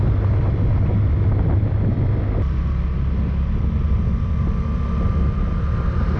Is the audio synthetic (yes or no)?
no